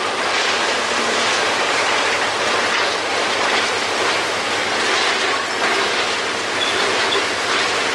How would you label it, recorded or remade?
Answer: recorded